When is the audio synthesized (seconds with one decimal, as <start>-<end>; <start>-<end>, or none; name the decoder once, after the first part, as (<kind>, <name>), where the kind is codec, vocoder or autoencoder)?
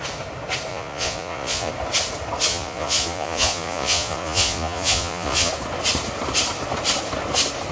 0.7-1.7 (vocoder, Vocos); 2.5-5.5